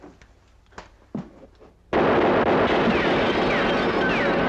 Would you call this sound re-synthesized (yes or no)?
no